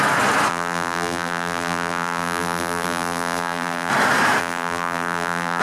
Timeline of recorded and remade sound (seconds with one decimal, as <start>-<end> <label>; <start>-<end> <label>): 0.0-0.5 recorded; 0.5-3.9 remade; 3.9-4.4 recorded; 4.4-5.6 remade